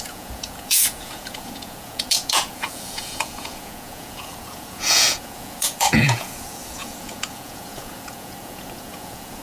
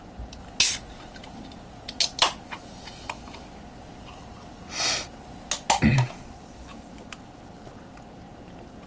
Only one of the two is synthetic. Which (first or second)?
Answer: first